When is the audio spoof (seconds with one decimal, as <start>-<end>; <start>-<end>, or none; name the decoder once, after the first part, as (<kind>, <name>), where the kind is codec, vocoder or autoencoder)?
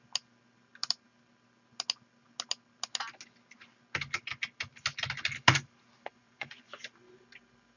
6.1-6.8 (vocoder, Vocos)